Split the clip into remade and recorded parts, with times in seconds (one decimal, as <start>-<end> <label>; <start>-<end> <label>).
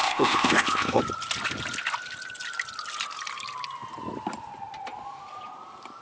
0.0-1.0 remade; 1.0-6.0 recorded